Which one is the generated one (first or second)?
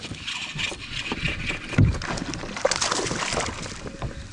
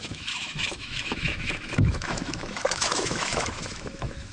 second